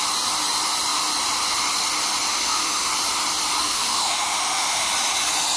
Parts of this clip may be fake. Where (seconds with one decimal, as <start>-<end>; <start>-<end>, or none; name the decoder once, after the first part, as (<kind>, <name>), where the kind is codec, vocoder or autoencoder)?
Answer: 2.3-2.9 (autoencoder, DAC-VAE); 3.6-4.9